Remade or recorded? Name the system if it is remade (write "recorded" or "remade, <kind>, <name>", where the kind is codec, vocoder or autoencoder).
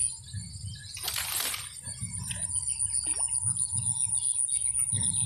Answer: recorded